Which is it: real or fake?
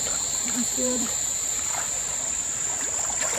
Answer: fake